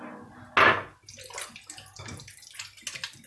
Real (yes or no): yes